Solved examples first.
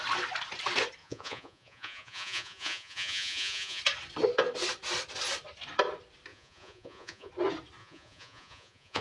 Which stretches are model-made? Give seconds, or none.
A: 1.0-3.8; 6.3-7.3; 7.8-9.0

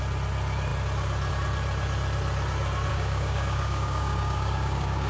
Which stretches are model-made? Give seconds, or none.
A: 2.9-5.1

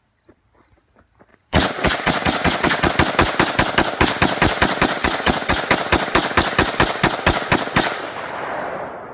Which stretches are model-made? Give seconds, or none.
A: 1.3-2.9; 5.0-5.6